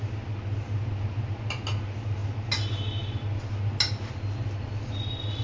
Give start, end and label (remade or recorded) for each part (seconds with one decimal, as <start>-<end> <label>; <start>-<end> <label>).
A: 0.0-5.4 recorded